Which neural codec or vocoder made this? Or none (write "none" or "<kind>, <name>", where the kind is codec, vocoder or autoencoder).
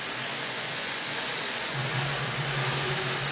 vocoder, Vocos